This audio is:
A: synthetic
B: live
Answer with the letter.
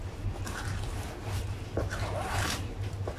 B